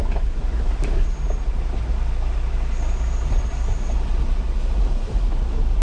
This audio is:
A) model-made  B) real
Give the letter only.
B